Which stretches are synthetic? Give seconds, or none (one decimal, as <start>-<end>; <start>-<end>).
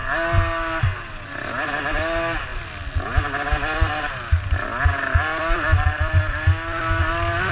none